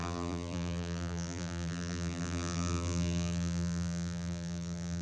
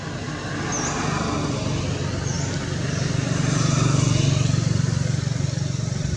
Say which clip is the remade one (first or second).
first